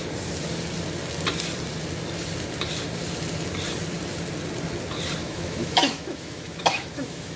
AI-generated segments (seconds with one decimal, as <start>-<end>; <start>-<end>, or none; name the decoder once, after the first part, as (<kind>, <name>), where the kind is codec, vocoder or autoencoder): 5.2-7.4 (autoencoder, DAC-VAE)

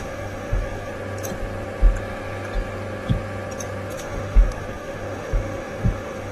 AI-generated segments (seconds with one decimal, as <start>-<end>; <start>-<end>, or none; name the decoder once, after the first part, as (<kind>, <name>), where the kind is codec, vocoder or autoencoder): 0.0-0.9 (autoencoder, DAC-VAE); 3.9-6.3

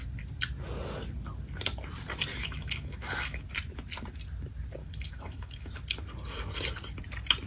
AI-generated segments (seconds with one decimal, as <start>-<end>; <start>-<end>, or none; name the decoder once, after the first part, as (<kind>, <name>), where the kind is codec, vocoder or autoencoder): 2.3-3.4 (autoencoder, DAC-VAE); 4.8-5.7

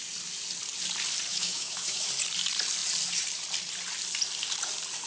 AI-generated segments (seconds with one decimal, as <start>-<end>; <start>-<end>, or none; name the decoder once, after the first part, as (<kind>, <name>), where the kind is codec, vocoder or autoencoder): 1.3-2.1 (autoencoder, DAC-VAE)